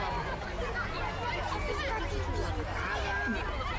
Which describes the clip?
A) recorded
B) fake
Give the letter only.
A